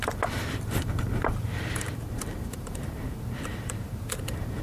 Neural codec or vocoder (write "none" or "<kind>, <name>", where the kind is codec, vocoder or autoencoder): vocoder, BigVGAN v2